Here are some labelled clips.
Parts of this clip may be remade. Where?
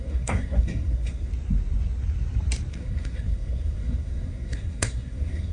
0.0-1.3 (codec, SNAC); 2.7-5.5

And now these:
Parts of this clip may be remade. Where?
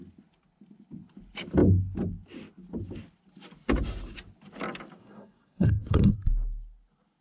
5.0-6.1 (codec, SNAC)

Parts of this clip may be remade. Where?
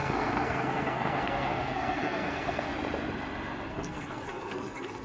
0.0-2.7 (codec, SNAC); 3.7-5.0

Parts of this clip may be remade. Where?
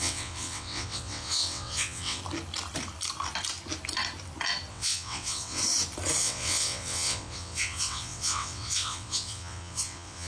0.0-2.2 (vocoder, WaveNeXt); 4.7-5.6; 6.2-10.3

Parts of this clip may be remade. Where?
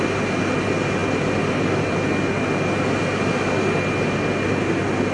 none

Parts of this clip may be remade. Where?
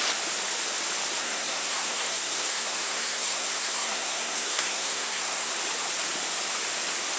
1.2-5.5 (codec, SNAC)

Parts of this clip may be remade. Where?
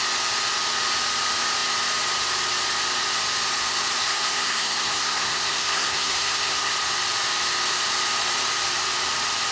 4.0-6.7 (codec, SNAC)